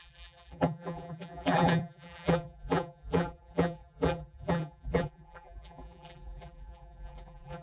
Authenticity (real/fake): fake